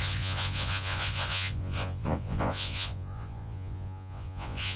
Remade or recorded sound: remade